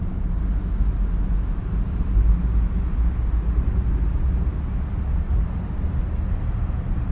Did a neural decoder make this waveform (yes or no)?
no